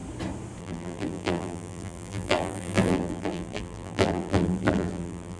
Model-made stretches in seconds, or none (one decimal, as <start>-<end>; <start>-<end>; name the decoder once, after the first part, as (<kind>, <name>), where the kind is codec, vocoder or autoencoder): 0.6-5.4 (vocoder, BigVGAN v2)